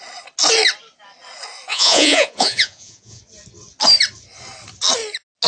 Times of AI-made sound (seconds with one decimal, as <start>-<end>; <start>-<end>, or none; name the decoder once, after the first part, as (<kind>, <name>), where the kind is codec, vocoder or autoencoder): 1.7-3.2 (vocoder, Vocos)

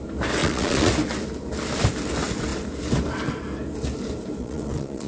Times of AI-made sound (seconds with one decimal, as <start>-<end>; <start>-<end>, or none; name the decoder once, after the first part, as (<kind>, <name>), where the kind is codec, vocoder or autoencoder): 0.4-0.9 (vocoder, Vocos); 4.4-5.1

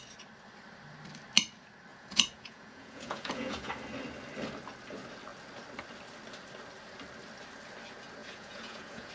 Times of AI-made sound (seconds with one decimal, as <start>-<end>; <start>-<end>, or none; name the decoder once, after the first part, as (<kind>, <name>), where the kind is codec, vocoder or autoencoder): 1.9-3.7 (vocoder, Vocos); 8.2-9.1

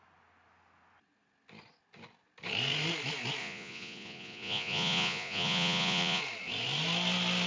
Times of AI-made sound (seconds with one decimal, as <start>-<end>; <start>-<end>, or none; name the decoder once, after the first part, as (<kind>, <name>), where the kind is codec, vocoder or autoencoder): 3.4-6.2 (vocoder, Vocos)

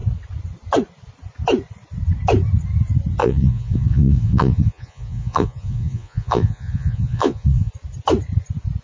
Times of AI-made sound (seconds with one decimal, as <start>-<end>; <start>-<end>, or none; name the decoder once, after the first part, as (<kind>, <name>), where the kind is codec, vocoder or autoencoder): 3.2-7.7 (vocoder, Vocos)

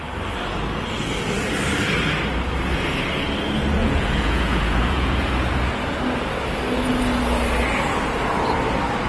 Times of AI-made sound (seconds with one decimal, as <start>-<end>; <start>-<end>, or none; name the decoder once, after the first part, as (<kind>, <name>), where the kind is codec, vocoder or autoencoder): 3.8-5.7 (vocoder, Vocos)